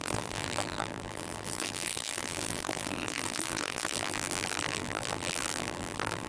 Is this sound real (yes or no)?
no